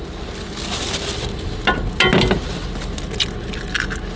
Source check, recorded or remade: recorded